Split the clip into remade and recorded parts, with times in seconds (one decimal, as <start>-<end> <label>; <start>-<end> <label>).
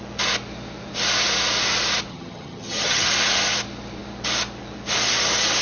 0.0-2.1 recorded; 2.1-3.1 remade; 3.1-5.6 recorded